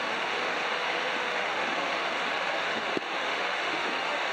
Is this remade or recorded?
remade